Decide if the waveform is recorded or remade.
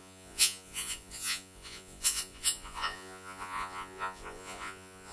remade